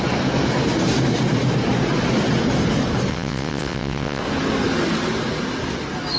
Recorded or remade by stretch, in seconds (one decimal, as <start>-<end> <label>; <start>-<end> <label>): 0.0-3.1 recorded; 3.1-4.2 remade; 4.2-6.2 recorded